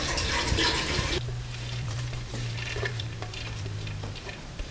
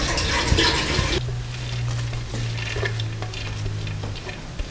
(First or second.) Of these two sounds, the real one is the second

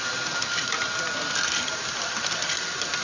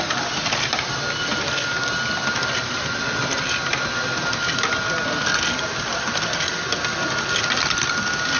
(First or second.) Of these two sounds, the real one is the second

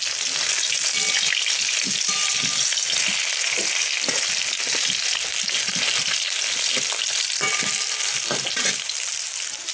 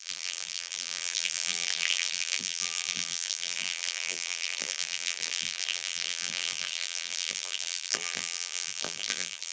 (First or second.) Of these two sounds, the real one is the first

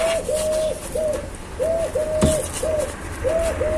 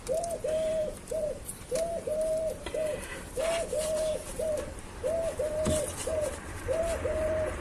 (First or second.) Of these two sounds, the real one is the first